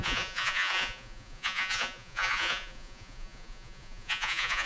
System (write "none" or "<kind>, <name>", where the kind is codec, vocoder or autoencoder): vocoder, Vocos